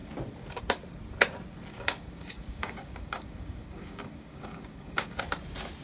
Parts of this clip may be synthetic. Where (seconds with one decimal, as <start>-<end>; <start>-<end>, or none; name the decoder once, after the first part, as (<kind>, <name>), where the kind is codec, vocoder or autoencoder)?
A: 1.7-5.2 (codec, DAC)